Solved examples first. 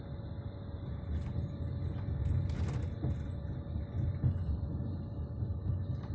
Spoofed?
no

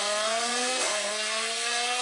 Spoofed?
yes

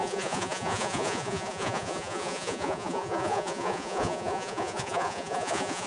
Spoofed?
yes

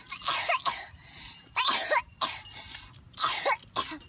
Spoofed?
no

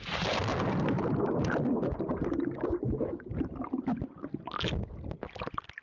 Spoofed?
no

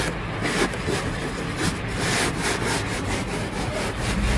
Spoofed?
no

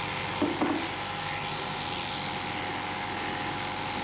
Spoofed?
no